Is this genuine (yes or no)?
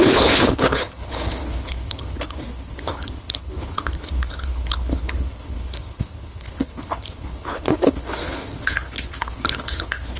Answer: no